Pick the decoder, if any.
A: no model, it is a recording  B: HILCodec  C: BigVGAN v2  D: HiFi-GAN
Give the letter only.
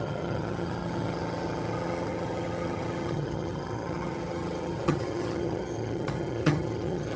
D